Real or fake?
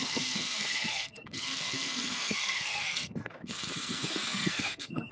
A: fake